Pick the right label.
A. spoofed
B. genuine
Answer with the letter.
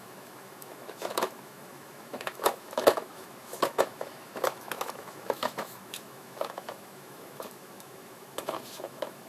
A